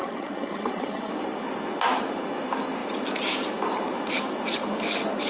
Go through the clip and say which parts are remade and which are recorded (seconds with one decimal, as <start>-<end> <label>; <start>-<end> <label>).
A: 0.0-1.1 remade; 1.1-5.3 recorded